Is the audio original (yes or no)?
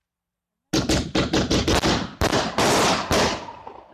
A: yes